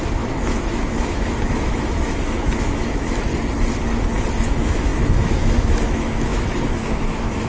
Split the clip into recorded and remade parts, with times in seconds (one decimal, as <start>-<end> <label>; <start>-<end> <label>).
0.0-3.3 remade; 3.3-4.3 recorded; 4.3-7.5 remade